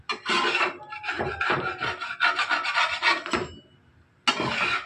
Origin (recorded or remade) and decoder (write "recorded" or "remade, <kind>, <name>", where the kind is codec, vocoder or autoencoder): recorded